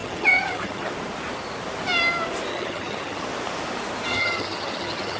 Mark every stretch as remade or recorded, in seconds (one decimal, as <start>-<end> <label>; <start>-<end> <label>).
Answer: 0.0-0.9 remade; 0.9-2.5 recorded; 2.5-3.2 remade; 3.2-4.1 recorded; 4.1-5.2 remade